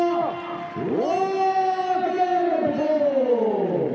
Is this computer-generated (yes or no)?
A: no